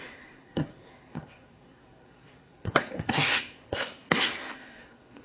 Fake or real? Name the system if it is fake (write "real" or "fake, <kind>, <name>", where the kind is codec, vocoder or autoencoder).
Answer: fake, codec, SNAC